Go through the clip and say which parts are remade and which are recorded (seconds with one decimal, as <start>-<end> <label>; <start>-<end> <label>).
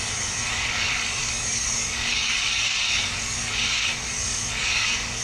0.0-5.2 remade